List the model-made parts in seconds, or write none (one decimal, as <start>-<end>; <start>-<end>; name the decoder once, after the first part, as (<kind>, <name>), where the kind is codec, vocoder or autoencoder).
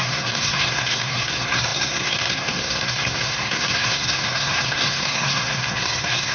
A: 0.0-6.3 (codec, SNAC)